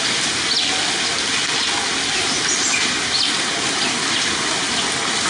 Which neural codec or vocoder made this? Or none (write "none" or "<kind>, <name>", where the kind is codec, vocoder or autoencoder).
none